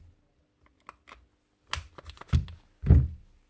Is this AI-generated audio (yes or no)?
no